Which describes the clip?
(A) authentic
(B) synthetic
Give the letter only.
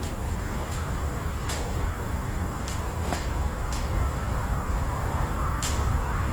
B